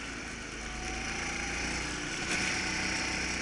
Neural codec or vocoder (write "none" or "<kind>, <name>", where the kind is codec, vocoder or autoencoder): none